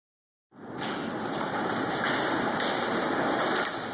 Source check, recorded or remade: recorded